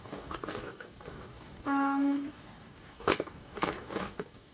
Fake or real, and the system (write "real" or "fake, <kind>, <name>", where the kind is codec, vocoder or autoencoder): fake, codec, DAC